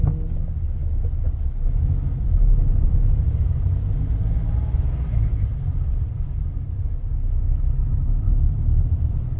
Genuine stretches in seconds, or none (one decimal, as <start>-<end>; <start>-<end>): 0.0-9.4